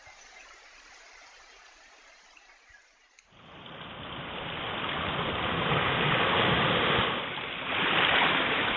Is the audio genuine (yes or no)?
no